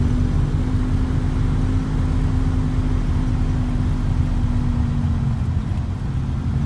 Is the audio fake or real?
real